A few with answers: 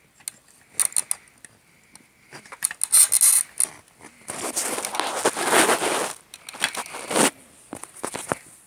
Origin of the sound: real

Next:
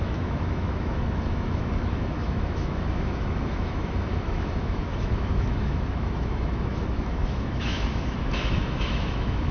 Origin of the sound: fake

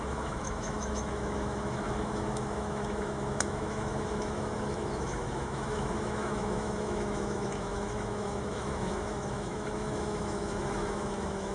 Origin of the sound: fake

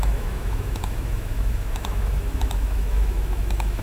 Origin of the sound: fake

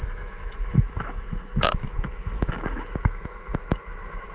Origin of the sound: fake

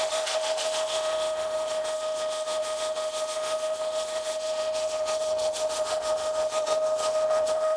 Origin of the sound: fake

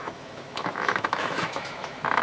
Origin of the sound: fake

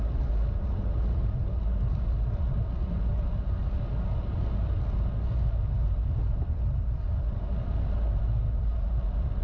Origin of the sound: real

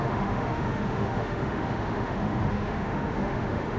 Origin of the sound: fake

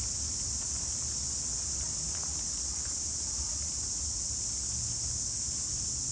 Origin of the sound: real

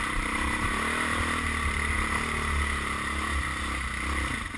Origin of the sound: real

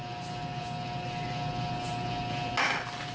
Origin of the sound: real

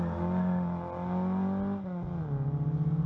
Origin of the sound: real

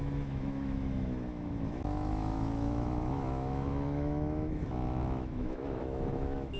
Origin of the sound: fake